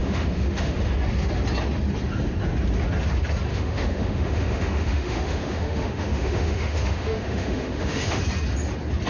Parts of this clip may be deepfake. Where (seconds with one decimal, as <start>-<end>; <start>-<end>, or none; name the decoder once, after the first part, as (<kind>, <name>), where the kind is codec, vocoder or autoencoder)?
0.0-0.9 (autoencoder, DAC-VAE); 3.5-8.2